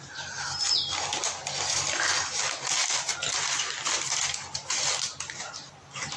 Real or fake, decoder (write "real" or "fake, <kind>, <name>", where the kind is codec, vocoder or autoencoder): real